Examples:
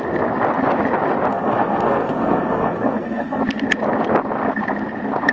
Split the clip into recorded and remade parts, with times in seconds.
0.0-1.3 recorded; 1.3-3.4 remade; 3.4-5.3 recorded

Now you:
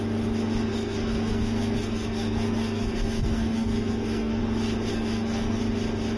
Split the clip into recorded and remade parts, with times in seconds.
0.0-0.7 recorded; 0.7-4.4 remade; 4.4-4.9 recorded; 4.9-5.6 remade; 5.6-6.2 recorded

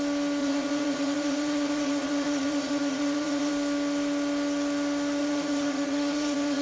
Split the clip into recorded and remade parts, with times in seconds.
0.0-0.4 recorded; 0.4-3.5 remade; 3.5-5.2 recorded; 5.2-6.6 remade

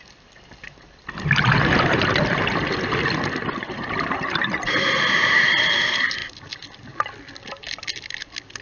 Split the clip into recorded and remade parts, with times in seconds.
0.0-6.2 remade; 6.2-7.9 recorded; 7.9-8.6 remade